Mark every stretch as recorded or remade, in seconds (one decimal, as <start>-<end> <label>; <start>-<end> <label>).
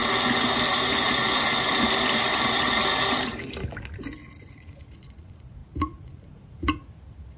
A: 0.0-4.4 recorded; 4.4-7.4 remade